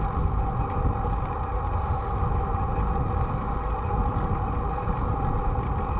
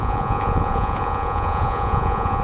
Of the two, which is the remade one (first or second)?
second